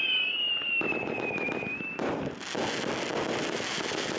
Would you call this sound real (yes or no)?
yes